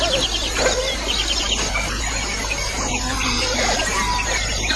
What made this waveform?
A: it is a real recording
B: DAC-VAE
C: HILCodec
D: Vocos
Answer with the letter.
A